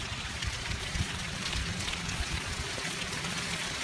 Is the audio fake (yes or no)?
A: yes